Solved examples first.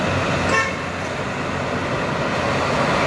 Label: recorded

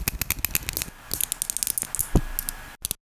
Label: recorded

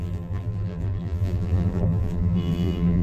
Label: remade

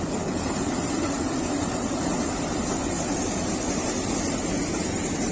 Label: recorded